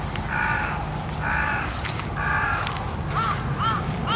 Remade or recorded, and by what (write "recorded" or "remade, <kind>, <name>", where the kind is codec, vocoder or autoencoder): recorded